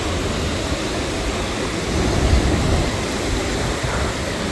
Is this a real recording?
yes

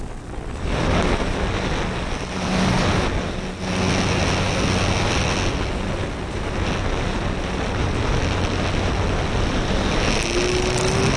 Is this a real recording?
yes